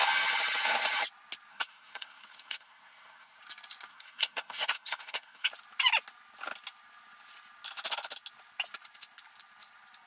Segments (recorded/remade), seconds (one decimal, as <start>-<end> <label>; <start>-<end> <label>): 0.0-1.5 recorded; 1.5-3.4 remade; 3.4-3.9 recorded; 3.9-5.5 remade; 5.5-10.1 recorded